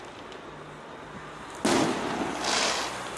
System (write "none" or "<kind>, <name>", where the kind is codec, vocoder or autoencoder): none